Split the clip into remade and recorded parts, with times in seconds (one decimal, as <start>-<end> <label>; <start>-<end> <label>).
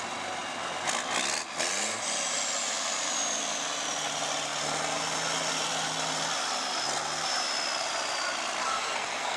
0.0-8.6 recorded; 8.6-9.4 remade